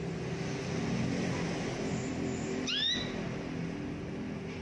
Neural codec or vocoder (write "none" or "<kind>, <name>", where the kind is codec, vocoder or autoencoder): none